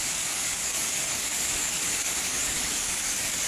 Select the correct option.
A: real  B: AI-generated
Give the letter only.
B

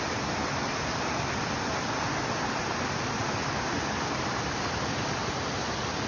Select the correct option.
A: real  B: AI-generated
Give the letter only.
A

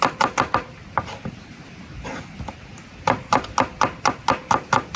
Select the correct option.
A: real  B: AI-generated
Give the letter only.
A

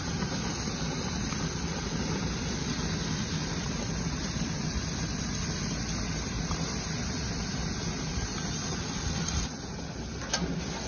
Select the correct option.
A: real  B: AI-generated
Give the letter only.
A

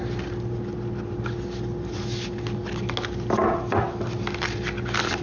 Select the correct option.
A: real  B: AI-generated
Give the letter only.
A